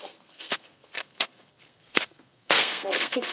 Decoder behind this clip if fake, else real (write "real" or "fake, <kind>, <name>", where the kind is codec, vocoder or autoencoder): fake, codec, SNAC